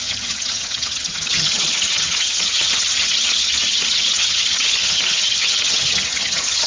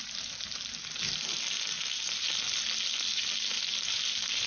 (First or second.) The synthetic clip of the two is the first